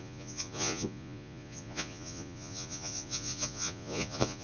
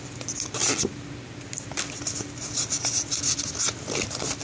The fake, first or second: first